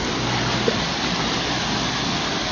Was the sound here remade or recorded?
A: recorded